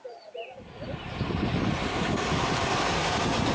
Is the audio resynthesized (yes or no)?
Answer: no